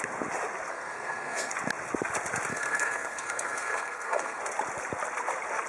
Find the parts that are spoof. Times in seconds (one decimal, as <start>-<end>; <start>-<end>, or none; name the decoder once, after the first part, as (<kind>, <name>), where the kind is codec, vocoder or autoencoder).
0.7-1.5 (codec, SNAC); 2.5-4.4